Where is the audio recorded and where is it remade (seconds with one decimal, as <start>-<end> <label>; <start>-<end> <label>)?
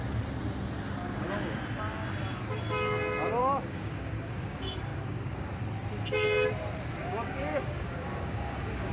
0.0-3.4 recorded; 3.4-4.4 remade; 4.4-4.9 recorded; 4.9-5.5 remade; 5.5-7.0 recorded; 7.0-8.9 remade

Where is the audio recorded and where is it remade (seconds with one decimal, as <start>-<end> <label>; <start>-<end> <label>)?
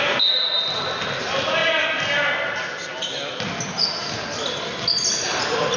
0.0-5.8 recorded